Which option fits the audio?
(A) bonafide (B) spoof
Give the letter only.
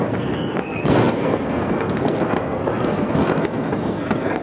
B